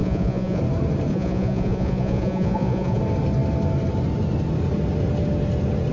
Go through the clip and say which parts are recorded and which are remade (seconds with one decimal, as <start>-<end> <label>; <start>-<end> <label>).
0.0-0.6 remade; 0.6-1.1 recorded; 1.1-3.0 remade; 3.0-5.9 recorded